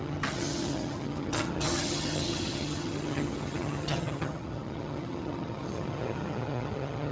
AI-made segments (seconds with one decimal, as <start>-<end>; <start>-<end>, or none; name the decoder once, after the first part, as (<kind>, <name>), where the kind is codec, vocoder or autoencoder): 0.0-7.1 (vocoder, HiFi-GAN)